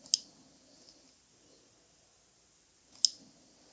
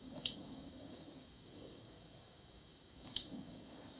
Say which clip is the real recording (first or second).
first